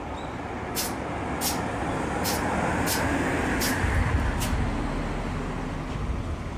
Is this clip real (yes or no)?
yes